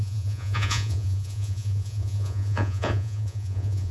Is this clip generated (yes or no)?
yes